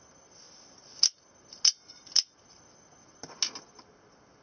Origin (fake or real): real